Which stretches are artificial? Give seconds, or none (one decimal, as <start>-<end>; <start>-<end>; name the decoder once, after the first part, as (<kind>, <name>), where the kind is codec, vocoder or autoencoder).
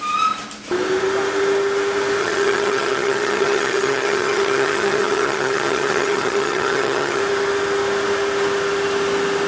2.2-7.2 (vocoder, HiFi-GAN)